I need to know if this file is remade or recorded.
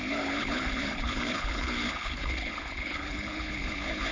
remade